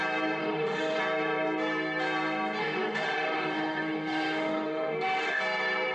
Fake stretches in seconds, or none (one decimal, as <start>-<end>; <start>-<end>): 0.4-1.0; 2.6-5.4